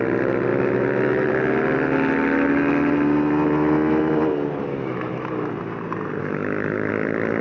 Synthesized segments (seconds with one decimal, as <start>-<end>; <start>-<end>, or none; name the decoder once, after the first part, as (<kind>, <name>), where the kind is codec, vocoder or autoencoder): 0.5-1.3 (autoencoder, DAC-VAE); 4.7-5.5; 6.2-6.9